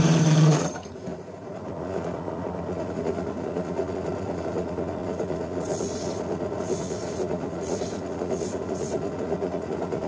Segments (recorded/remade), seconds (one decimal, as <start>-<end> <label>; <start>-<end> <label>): 0.0-10.1 remade